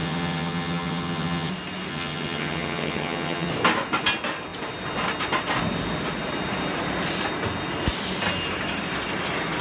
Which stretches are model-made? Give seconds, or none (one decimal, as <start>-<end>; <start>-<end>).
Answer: 0.0-1.5; 1.9-3.5

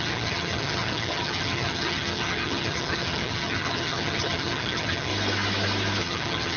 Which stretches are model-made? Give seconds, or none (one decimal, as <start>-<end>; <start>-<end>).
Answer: 0.0-5.1; 6.0-6.6

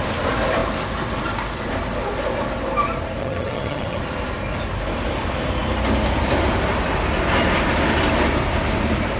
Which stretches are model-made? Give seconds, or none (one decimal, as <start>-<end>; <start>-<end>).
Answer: 3.2-4.0

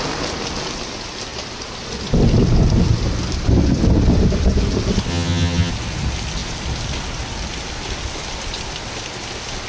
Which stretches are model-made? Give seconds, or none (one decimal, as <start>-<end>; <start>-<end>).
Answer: 5.1-5.7

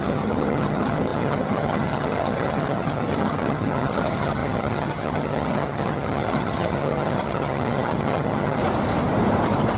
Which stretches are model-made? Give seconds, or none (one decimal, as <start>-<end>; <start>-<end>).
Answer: 0.0-8.6

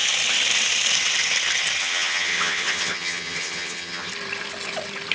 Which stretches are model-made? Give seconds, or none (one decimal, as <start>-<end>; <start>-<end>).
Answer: 1.8-4.1

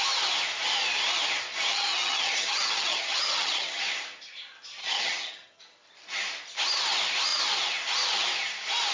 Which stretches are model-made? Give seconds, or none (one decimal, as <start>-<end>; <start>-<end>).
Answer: 1.7-3.8; 4.8-5.6